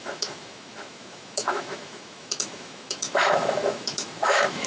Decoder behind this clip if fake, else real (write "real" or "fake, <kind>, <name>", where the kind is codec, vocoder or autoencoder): fake, autoencoder, DAC-VAE